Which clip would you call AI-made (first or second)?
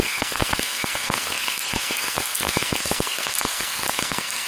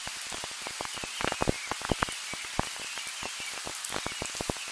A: first